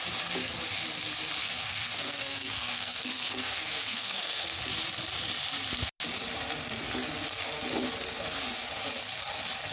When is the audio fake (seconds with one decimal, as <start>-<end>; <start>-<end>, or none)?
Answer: 1.4-4.6